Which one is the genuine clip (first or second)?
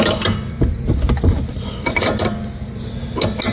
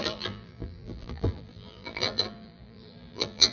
first